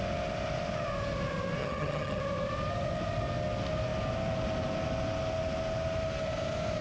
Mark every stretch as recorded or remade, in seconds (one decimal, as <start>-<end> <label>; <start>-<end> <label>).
0.0-1.6 recorded; 1.6-2.2 remade; 2.2-6.8 recorded

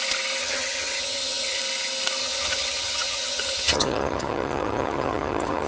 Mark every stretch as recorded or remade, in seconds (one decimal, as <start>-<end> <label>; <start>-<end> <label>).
0.0-0.4 recorded; 0.4-1.6 remade; 1.6-2.2 recorded; 2.2-5.7 remade

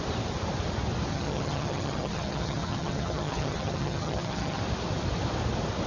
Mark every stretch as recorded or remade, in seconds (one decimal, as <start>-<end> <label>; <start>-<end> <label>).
0.0-1.1 recorded; 1.1-4.6 remade; 4.6-5.9 recorded